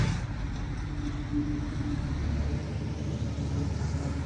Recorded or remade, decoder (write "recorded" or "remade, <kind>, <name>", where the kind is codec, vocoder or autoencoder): recorded